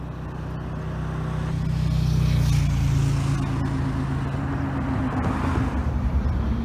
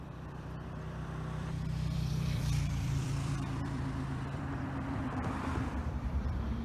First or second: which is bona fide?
first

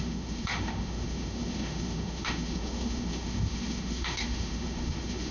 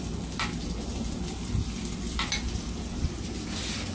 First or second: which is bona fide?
second